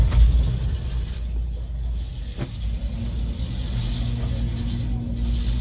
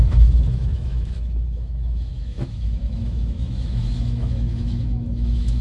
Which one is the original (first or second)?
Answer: first